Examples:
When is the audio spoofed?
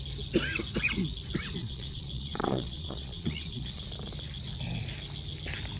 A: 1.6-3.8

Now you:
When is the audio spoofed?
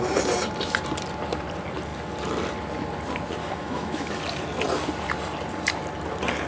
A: 3.4-4.2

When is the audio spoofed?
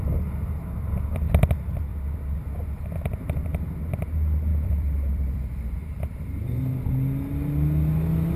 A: 4.5-6.9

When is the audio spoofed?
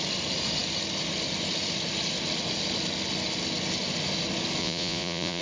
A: 4.6-5.4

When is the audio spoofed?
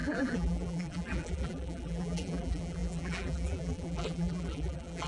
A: 0.0-5.1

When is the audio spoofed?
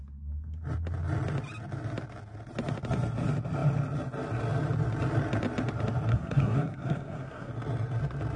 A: 6.1-7.5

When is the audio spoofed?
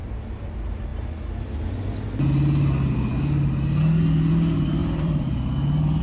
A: 0.0-0.5; 4.8-6.0